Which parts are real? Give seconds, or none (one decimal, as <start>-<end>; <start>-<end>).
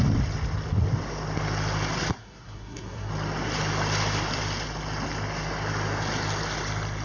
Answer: 0.0-2.1; 3.1-7.0